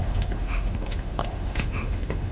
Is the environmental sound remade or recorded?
remade